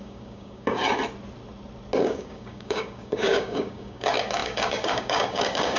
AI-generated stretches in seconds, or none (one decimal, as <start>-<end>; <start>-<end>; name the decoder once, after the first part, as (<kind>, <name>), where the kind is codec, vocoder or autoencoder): 0.0-0.8 (codec, DAC); 2.0-5.8